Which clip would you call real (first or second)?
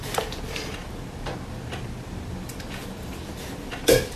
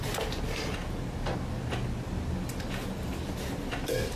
second